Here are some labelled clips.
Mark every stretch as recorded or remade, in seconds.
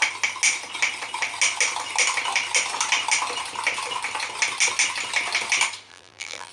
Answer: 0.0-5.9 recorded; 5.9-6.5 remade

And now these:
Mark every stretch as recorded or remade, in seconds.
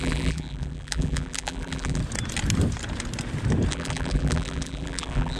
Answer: 0.0-2.0 remade; 2.0-3.7 recorded; 3.7-5.4 remade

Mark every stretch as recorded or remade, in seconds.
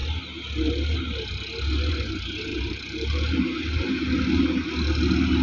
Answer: 0.0-2.5 recorded; 2.5-4.2 remade; 4.2-5.4 recorded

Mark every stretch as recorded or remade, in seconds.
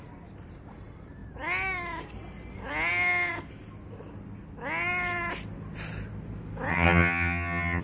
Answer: 0.0-6.7 recorded; 6.7-7.8 remade